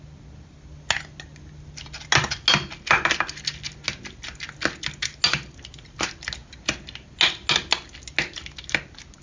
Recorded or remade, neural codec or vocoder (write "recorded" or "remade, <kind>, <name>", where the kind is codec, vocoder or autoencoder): recorded